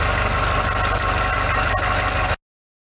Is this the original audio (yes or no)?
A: yes